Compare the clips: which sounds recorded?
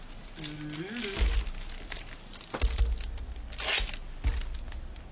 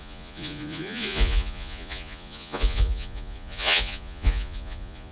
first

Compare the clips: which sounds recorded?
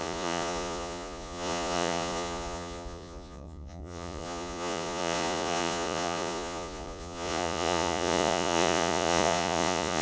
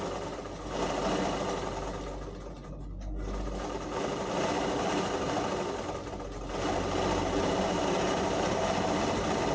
second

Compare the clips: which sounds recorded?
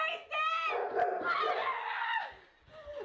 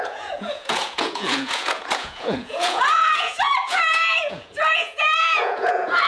first